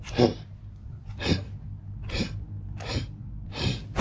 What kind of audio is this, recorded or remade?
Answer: recorded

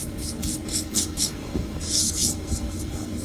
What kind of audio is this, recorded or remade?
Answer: remade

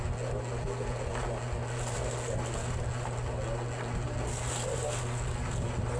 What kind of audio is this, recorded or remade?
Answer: recorded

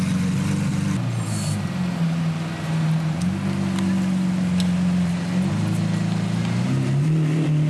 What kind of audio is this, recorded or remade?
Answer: recorded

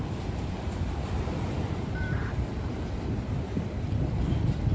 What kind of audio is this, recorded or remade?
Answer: remade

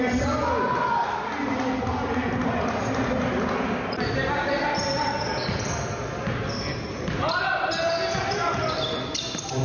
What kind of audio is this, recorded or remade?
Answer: recorded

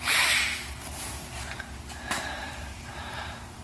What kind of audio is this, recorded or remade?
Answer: remade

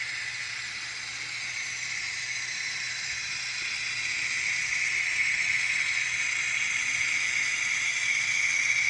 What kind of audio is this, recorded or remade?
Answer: recorded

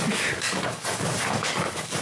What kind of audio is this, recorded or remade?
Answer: remade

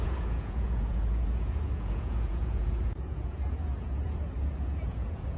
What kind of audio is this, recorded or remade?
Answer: remade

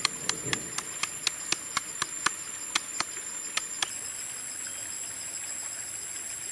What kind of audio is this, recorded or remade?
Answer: recorded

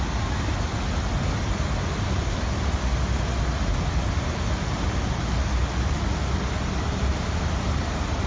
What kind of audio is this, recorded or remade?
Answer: recorded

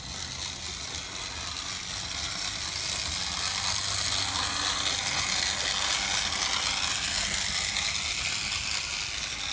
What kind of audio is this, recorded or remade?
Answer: recorded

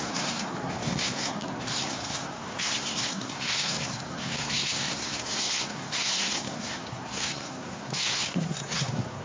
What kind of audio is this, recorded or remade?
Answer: remade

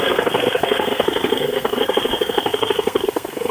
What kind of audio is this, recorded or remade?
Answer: remade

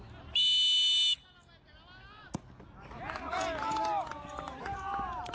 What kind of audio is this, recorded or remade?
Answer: recorded